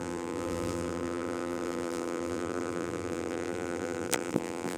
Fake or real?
fake